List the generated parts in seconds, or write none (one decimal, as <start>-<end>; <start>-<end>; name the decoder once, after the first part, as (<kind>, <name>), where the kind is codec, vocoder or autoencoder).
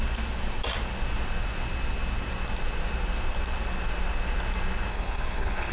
4.9-5.7 (codec, HILCodec)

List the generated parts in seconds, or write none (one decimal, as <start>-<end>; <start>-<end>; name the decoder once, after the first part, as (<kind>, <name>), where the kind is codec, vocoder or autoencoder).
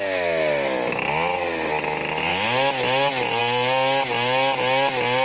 none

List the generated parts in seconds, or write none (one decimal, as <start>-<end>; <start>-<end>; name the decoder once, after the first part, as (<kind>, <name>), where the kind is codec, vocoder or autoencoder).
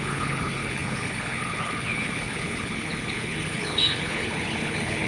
0.0-5.1 (codec, HILCodec)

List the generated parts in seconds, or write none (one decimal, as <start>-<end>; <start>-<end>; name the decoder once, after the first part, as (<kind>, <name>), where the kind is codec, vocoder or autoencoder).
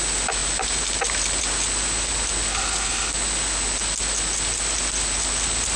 2.5-3.1 (codec, HILCodec)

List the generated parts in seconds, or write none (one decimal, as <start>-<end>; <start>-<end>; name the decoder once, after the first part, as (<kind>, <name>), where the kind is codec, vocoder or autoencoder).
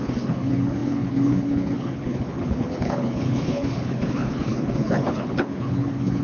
0.0-6.2 (codec, HILCodec)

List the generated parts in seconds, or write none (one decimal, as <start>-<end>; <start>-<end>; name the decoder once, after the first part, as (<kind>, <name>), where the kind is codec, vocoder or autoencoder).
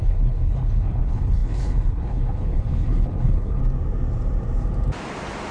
0.0-3.6 (codec, HILCodec)